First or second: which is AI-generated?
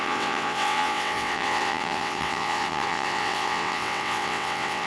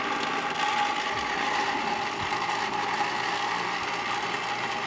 first